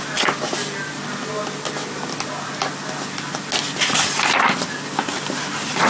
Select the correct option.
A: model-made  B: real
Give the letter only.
B